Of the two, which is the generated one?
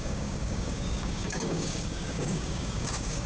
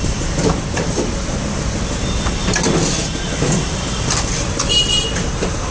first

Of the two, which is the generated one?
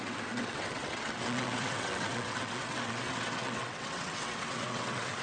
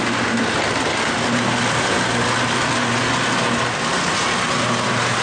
first